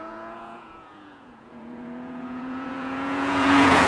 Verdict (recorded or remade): remade